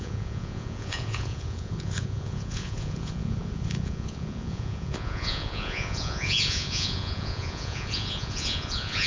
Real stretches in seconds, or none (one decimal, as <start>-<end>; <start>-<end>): none